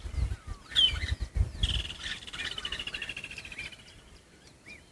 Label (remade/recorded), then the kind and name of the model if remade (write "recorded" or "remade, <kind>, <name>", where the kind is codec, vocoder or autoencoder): recorded